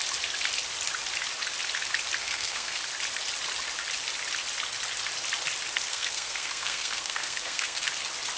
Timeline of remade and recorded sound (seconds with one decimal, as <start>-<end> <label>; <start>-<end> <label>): 0.0-2.2 recorded; 2.2-2.8 remade; 2.8-5.9 recorded; 5.9-7.9 remade; 7.9-8.4 recorded